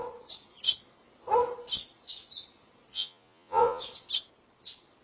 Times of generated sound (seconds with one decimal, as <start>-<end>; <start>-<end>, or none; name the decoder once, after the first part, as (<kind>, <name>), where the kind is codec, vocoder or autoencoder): 2.9-3.8 (vocoder, Vocos)